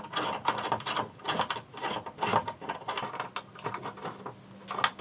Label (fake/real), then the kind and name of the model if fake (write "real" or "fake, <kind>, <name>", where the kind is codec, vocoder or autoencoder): real